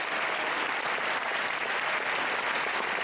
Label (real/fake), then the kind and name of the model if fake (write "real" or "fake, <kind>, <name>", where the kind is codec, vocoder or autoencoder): real